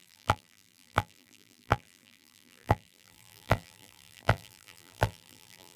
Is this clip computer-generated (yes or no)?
yes